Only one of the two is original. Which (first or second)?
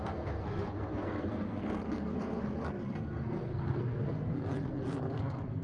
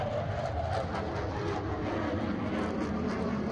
second